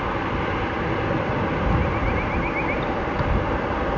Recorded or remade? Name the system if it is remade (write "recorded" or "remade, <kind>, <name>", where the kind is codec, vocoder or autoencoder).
recorded